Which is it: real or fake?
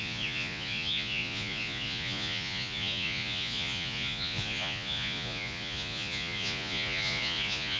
fake